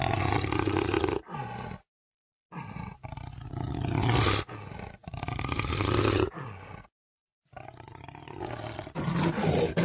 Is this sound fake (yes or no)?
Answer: no